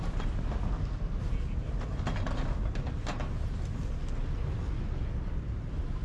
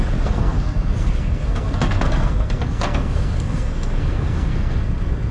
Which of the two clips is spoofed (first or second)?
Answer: second